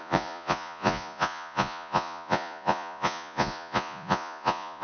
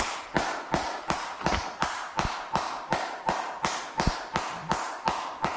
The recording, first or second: second